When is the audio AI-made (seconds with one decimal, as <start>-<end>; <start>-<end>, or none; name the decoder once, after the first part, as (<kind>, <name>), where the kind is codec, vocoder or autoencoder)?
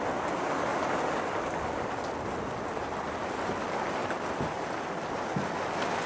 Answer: none